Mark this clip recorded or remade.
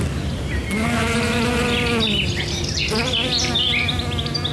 recorded